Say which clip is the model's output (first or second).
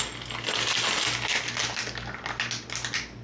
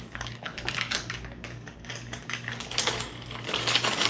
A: second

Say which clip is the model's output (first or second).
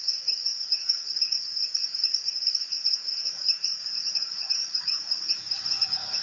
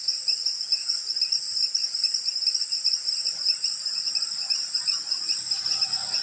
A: first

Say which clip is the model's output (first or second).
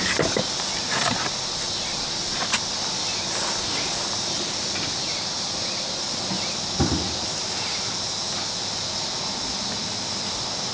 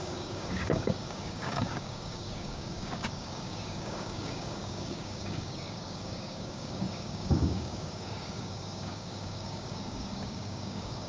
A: second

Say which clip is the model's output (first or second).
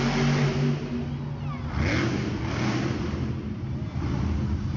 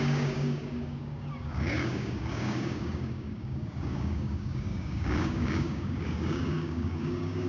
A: second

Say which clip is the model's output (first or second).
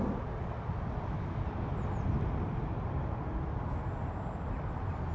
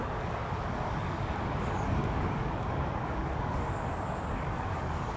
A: second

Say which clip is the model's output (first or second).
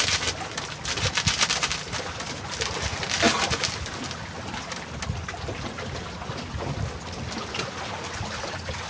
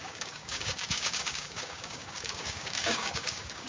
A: second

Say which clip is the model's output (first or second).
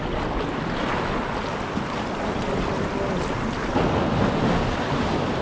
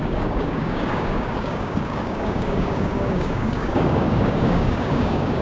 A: second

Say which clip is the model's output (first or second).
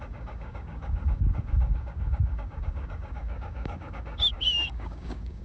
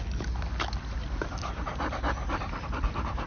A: first